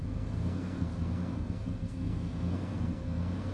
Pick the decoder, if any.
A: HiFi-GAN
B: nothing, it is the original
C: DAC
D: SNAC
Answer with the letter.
D